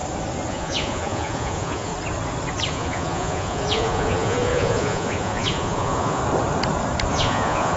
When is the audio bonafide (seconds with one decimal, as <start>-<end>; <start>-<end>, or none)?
0.0-0.5; 1.9-2.7; 6.2-7.1